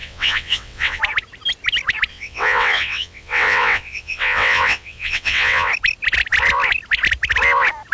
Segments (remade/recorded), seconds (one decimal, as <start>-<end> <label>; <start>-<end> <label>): 0.0-1.0 remade; 1.0-2.1 recorded; 2.1-5.7 remade; 5.7-7.9 recorded